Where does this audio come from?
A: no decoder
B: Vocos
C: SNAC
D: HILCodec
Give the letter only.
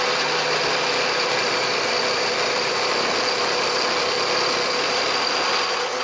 A